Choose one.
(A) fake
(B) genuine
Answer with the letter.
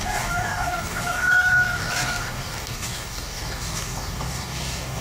A